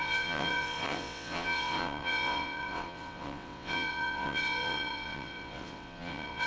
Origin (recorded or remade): remade